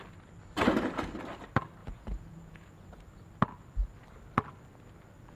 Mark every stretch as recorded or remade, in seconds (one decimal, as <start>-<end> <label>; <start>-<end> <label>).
0.0-1.8 recorded; 1.8-2.9 remade; 2.9-5.4 recorded